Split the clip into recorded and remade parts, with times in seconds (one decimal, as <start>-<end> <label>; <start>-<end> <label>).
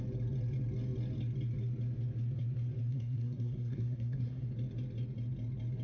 0.0-2.9 recorded; 2.9-4.5 remade; 4.5-5.8 recorded